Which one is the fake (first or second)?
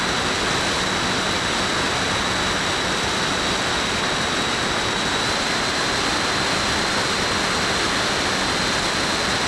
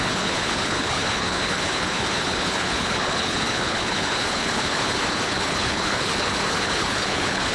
second